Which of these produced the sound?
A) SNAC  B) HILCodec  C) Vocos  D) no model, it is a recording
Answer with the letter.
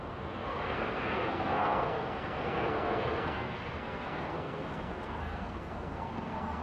A